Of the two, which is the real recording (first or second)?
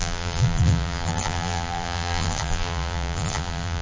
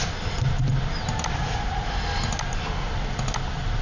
second